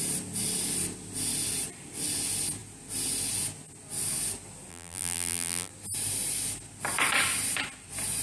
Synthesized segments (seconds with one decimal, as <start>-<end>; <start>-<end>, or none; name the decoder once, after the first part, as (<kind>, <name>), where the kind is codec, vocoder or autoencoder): 4.7-5.7 (vocoder, BigVGAN v2)